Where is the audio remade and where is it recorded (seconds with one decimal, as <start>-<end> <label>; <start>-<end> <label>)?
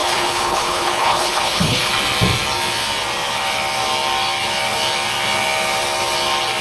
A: 0.0-1.9 remade; 1.9-6.6 recorded